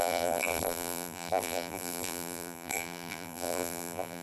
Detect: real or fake fake